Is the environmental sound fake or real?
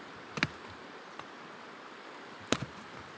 real